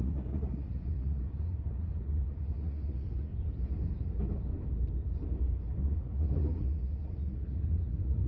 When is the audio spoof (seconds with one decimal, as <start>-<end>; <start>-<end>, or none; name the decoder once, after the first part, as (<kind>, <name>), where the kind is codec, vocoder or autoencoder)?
0.0-3.3 (vocoder, Vocos); 5.8-8.3